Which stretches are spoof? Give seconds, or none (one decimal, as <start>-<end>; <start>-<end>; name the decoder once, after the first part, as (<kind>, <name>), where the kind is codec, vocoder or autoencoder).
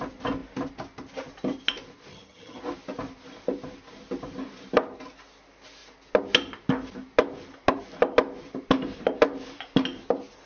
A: 2.1-2.6 (vocoder, HiFi-GAN)